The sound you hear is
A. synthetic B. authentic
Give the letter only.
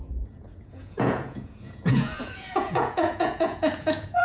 A